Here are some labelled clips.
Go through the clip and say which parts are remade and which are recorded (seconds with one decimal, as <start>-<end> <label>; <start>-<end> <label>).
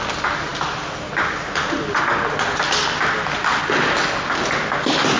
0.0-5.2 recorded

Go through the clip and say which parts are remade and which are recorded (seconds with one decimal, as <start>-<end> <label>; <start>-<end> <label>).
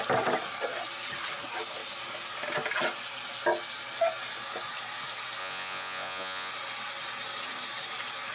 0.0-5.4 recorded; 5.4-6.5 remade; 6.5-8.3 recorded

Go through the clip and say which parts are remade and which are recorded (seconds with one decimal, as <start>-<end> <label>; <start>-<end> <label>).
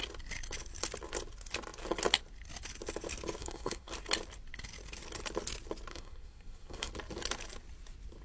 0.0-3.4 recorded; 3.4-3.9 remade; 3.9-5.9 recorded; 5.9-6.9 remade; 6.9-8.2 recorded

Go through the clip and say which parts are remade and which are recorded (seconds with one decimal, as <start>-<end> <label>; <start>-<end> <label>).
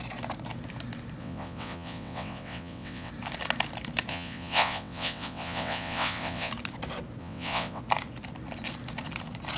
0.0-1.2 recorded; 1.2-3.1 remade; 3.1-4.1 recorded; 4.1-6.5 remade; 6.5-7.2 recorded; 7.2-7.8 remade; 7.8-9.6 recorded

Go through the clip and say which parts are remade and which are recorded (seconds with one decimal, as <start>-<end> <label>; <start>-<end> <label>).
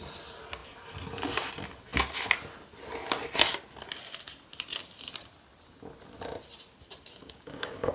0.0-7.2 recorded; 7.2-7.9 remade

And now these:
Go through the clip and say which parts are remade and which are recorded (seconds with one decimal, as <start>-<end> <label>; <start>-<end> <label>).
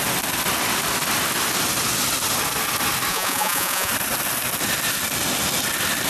0.0-3.1 recorded; 3.1-3.9 remade; 3.9-6.1 recorded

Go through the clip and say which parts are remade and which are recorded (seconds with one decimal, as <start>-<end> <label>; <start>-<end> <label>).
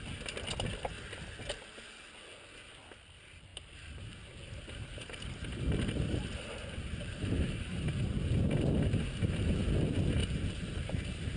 0.0-3.5 recorded; 3.5-7.9 remade; 7.9-10.2 recorded; 10.2-11.4 remade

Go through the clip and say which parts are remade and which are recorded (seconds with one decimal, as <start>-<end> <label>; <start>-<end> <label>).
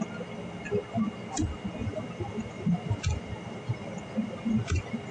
0.0-1.8 recorded; 1.8-5.1 remade